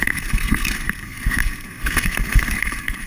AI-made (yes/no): yes